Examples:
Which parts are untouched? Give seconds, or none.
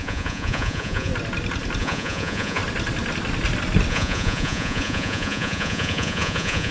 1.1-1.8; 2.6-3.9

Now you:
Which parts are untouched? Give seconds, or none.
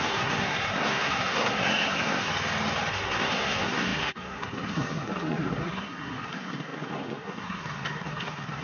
2.3-2.9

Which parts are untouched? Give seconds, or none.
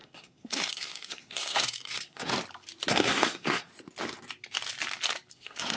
2.3-2.9; 3.7-5.3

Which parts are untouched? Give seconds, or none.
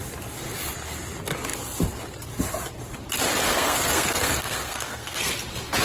0.0-3.5; 5.3-5.8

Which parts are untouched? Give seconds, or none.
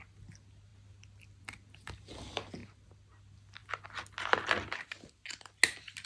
0.0-6.1